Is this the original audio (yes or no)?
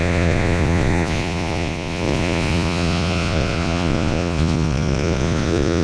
no